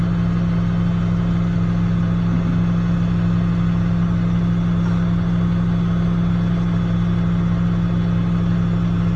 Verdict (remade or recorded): recorded